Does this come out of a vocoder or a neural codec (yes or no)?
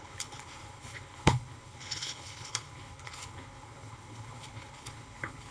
yes